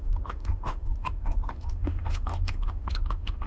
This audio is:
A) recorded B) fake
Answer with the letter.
B